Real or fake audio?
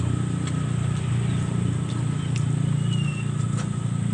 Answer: real